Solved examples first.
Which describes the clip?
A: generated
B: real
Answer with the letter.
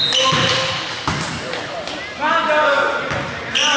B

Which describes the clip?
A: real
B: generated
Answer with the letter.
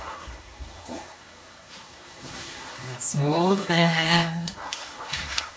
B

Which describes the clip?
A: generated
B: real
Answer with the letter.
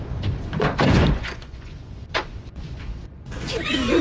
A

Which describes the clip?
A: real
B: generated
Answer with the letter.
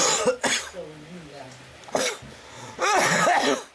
A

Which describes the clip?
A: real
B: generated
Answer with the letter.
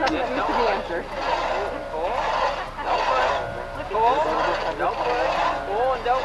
A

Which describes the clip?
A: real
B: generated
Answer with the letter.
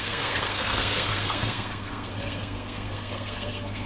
B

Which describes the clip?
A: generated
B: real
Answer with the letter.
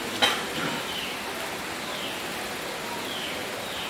B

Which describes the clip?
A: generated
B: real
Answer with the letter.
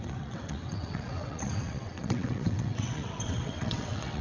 A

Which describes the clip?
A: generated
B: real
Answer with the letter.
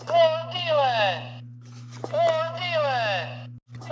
B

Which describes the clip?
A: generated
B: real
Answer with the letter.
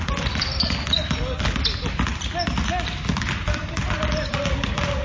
B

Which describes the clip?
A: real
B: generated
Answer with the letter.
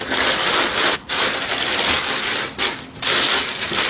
A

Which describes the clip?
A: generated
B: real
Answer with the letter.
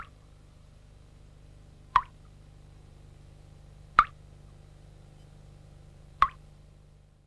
A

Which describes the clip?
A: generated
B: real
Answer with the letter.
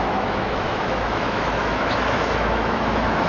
A